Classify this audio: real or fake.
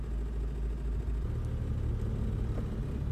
real